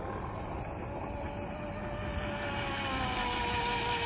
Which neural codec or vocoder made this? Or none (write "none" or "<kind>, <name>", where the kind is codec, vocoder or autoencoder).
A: none